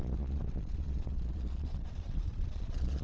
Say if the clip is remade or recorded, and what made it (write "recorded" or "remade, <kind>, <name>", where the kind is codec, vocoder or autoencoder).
remade, vocoder, Vocos